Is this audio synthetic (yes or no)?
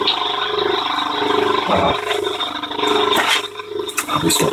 no